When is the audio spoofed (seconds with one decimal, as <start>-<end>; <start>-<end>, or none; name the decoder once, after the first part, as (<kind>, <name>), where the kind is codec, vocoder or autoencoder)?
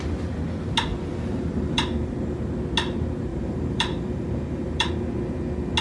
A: 1.1-2.1 (vocoder, BigVGAN v2); 3.3-4.9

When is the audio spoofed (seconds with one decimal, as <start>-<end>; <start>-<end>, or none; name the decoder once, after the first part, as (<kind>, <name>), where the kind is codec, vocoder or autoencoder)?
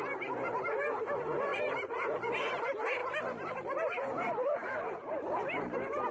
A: 1.5-2.3 (vocoder, BigVGAN v2); 3.0-5.1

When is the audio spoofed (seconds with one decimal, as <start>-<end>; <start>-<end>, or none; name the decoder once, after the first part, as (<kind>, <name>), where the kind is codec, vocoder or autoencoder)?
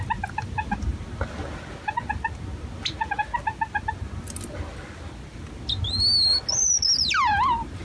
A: none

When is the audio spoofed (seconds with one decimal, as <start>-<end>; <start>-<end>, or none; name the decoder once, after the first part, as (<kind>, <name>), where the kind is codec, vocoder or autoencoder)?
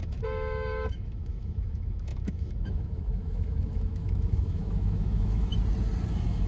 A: 0.0-5.5 (autoencoder, DAC-VAE); 6.1-6.5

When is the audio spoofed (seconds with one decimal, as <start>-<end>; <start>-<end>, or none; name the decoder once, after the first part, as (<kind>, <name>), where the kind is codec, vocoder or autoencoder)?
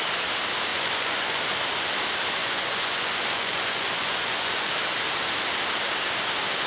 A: 0.7-1.4 (vocoder, Vocos); 2.4-4.7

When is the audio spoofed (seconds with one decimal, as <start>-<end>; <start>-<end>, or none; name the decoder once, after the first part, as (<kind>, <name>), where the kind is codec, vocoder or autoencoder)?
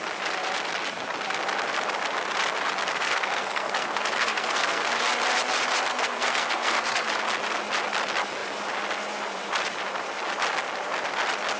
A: 2.9-4.9 (codec, SNAC); 5.9-7.1